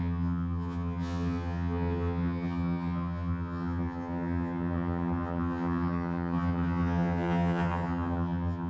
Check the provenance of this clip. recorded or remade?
remade